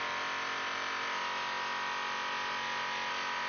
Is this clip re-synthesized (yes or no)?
no